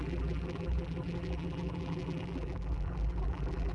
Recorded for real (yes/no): no